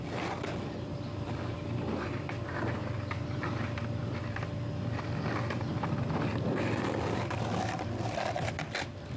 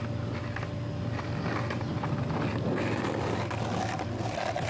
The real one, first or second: second